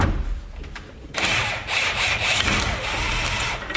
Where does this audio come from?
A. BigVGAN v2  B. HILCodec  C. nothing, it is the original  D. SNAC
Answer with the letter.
C